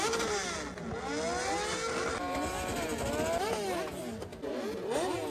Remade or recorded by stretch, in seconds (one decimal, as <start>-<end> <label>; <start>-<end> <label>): 0.0-5.3 recorded